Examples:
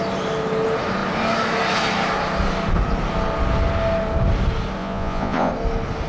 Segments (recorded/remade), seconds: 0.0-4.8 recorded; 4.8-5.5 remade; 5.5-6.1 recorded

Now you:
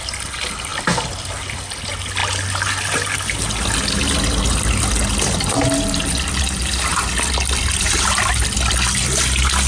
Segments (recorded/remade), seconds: 0.0-9.7 recorded